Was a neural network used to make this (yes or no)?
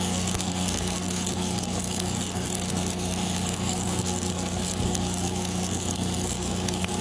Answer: yes